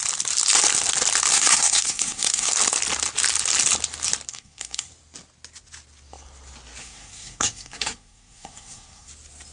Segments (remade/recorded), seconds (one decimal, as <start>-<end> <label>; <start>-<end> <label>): 0.0-1.3 recorded; 1.3-2.5 remade; 2.5-4.3 recorded; 4.3-4.9 remade; 4.9-6.8 recorded; 6.8-9.1 remade; 9.1-9.5 recorded